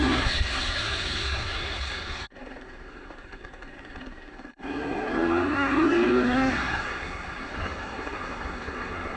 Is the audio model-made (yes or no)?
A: yes